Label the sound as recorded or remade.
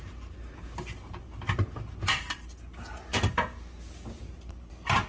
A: recorded